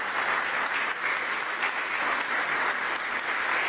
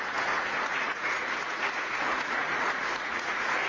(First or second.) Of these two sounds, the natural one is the first